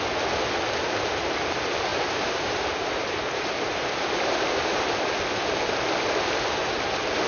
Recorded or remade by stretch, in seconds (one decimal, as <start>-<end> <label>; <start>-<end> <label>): 0.0-1.9 recorded; 1.9-5.1 remade; 5.1-7.3 recorded